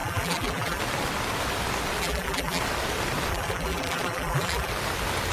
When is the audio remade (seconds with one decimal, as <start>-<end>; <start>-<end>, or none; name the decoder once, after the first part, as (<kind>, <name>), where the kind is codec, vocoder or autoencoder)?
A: 0.0-0.8 (vocoder, BigVGAN v2); 2.0-2.6; 3.3-4.7